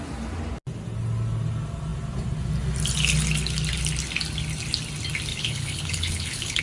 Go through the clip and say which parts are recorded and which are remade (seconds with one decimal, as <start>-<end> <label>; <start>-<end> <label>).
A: 0.0-5.3 recorded; 5.3-6.6 remade